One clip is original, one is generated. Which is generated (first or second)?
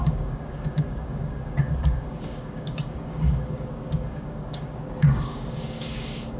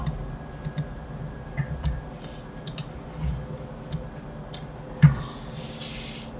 first